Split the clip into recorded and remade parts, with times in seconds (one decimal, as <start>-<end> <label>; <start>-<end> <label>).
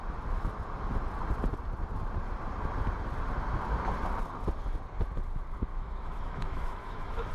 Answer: 0.0-5.7 recorded; 5.7-7.3 remade